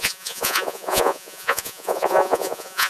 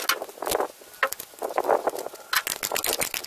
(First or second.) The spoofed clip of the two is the first